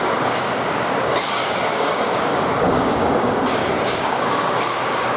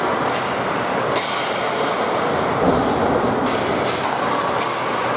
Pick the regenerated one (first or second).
first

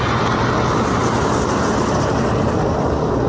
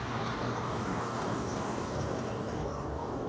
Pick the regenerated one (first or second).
second